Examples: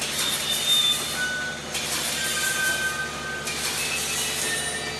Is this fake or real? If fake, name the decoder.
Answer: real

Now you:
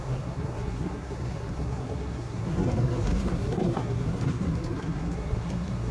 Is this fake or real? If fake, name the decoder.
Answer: fake, codec, SNAC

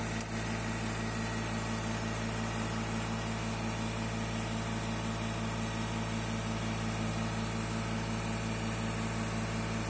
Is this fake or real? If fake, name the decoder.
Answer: real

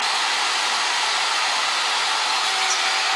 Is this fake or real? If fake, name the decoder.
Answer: real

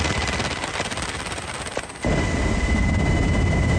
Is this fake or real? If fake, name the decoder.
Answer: real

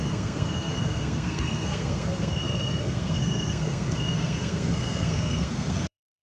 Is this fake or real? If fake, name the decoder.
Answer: fake, codec, SNAC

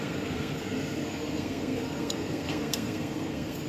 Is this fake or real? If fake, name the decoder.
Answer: fake, codec, SNAC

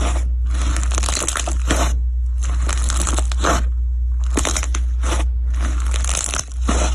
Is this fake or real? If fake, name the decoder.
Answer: real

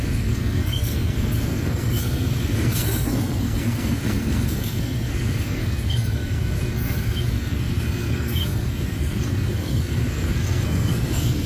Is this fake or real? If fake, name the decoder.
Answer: fake, codec, SNAC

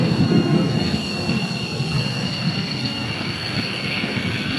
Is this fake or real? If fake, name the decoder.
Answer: fake, codec, SNAC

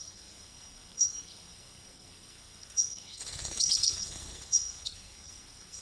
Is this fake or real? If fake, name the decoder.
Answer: fake, codec, SNAC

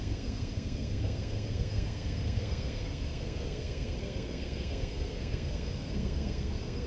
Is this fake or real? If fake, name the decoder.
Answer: fake, codec, SNAC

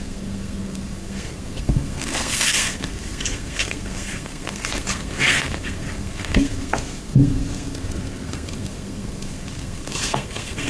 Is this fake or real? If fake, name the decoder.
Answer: fake, codec, SNAC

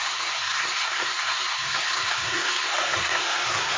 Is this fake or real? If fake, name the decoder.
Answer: fake, codec, SNAC